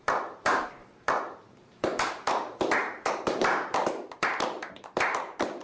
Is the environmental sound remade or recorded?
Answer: remade